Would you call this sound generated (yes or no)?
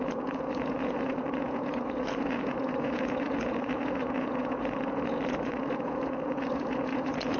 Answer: yes